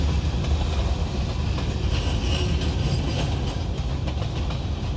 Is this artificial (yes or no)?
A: no